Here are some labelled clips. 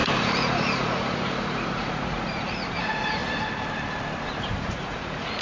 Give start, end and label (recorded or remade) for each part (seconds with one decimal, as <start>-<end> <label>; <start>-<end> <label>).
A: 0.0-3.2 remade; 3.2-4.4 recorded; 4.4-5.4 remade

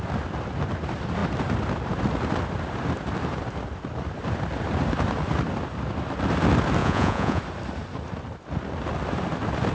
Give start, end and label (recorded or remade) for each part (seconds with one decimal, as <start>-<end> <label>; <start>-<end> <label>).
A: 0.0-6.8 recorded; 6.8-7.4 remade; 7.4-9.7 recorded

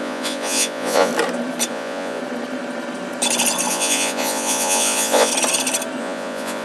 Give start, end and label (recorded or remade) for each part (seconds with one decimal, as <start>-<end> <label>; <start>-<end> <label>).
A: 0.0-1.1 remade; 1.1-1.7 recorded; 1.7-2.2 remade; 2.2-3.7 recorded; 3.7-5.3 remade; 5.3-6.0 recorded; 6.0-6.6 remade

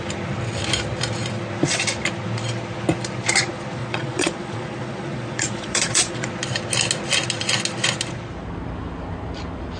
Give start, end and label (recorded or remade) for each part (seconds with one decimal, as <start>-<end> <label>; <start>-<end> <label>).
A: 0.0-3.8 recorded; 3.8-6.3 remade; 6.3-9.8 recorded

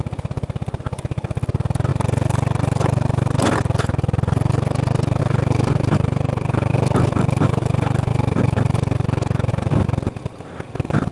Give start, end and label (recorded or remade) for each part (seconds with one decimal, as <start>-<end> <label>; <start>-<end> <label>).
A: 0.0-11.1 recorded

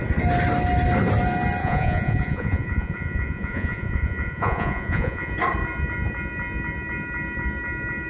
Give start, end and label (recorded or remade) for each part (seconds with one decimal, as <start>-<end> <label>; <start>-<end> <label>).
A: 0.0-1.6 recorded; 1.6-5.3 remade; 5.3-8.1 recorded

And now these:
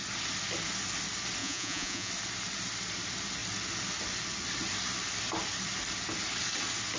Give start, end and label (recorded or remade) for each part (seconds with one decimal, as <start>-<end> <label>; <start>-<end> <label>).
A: 0.0-1.4 recorded; 1.4-2.1 remade; 2.1-7.0 recorded

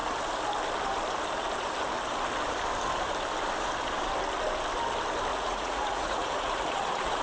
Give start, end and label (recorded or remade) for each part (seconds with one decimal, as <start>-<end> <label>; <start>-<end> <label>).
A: 0.0-5.3 recorded; 5.3-7.2 remade